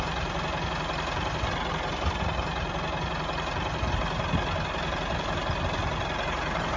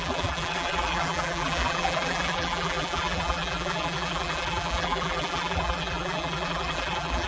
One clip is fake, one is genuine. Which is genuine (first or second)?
first